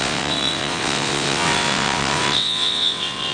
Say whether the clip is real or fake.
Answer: fake